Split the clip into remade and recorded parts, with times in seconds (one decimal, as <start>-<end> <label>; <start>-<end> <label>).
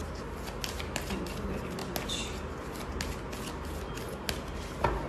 0.0-5.1 recorded